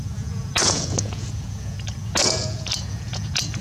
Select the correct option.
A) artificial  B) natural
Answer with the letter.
A